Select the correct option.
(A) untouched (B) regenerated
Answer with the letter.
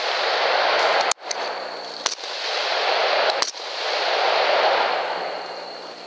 A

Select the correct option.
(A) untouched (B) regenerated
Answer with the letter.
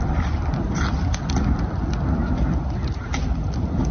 A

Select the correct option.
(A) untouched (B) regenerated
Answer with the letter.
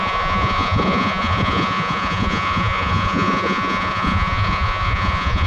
B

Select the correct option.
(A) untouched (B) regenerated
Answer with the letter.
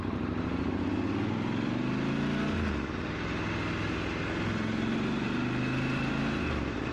A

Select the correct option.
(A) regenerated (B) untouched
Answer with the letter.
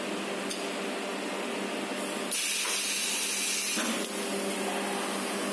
B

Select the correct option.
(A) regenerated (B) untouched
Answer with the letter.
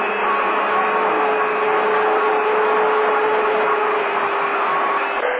B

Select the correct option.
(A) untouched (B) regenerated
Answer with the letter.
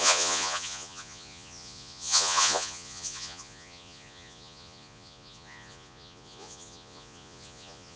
B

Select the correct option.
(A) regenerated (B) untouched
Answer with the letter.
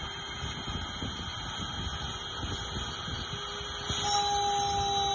B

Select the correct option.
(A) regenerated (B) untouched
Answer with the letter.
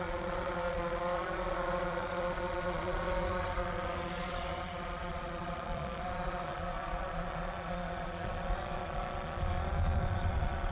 A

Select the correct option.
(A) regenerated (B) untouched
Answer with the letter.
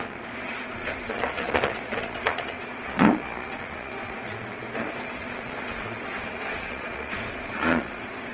A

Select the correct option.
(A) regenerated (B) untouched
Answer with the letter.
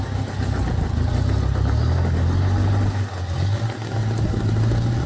B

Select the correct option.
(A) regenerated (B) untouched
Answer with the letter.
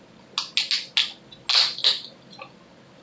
B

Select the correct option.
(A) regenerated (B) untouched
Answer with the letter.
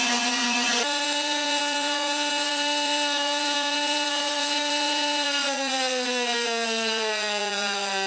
A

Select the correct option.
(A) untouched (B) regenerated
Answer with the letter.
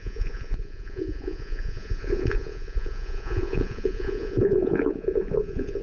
B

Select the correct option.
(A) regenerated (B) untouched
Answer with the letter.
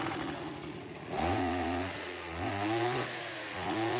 A